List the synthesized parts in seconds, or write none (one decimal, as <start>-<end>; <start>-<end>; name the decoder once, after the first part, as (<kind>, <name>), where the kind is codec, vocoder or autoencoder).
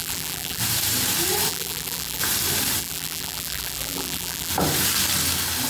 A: 0.0-0.6 (vocoder, BigVGAN v2); 1.5-2.2; 2.8-4.5